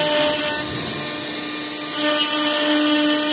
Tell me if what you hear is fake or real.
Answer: real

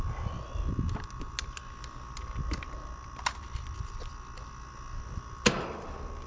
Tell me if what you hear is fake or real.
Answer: real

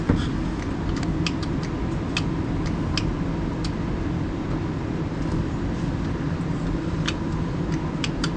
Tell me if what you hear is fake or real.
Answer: real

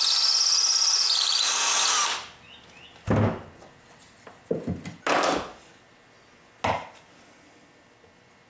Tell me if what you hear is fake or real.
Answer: real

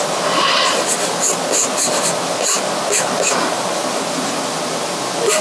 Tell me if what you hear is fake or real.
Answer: real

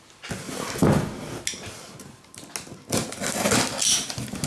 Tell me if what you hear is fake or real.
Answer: real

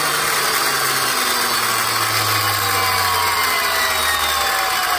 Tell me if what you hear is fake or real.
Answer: real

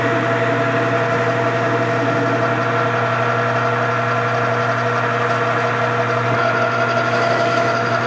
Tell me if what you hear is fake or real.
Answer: real